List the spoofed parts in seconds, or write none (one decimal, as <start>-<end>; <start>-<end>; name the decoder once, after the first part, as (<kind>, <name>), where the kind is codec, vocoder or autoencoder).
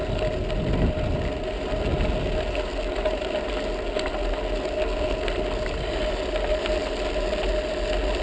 none